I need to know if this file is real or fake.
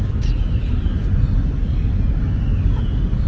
real